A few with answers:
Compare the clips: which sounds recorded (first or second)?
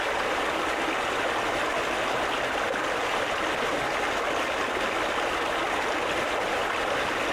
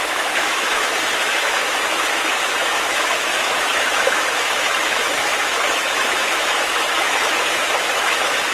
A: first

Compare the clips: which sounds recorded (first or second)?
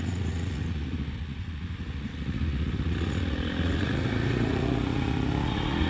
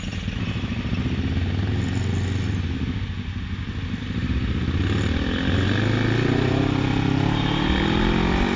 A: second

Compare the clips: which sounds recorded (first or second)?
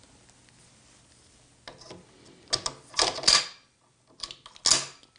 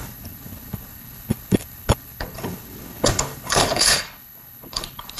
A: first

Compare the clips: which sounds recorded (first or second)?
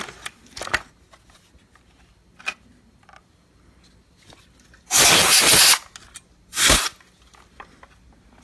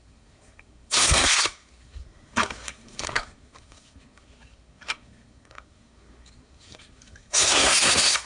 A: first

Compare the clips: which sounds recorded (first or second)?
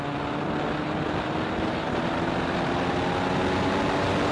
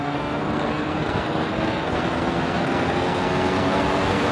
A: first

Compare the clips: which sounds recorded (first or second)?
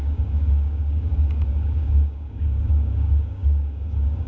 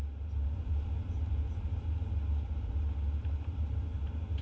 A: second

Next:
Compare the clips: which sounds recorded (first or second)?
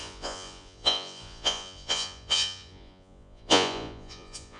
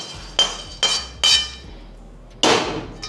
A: second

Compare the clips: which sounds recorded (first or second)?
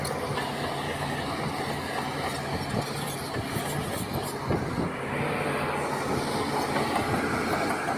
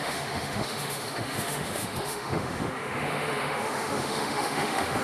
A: first